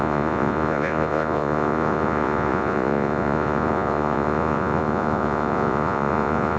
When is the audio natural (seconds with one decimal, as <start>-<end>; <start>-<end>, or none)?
none